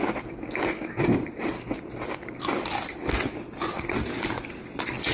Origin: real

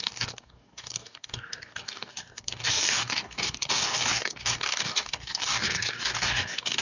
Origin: fake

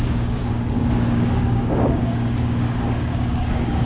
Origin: fake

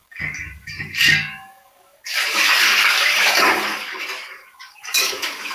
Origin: fake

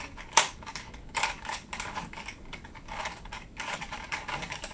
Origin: fake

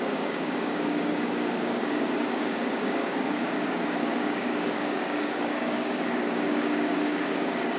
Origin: fake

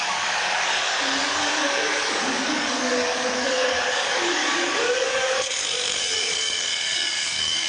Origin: fake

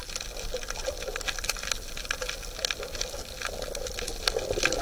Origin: real